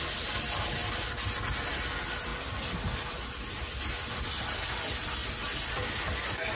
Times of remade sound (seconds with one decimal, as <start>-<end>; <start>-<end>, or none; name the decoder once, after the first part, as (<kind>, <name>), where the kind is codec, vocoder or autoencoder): none